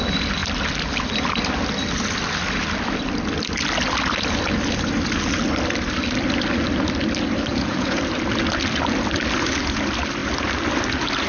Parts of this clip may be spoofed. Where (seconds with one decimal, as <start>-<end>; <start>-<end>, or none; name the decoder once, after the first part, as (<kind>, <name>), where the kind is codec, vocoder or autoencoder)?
7.5-8.0 (vocoder, Vocos)